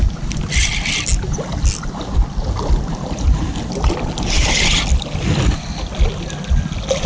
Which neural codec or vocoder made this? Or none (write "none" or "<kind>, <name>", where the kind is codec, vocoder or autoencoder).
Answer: none